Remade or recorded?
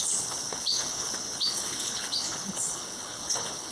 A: remade